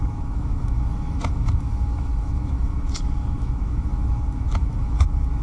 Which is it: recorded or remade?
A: remade